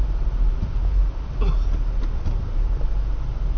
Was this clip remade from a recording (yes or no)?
no